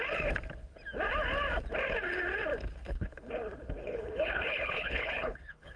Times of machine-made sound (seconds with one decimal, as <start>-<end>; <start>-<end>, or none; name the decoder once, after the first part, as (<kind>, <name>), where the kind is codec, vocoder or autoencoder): 2.8-3.3 (codec, HILCodec); 3.8-5.8